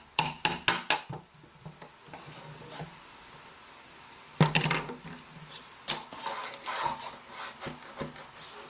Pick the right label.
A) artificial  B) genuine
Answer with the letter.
B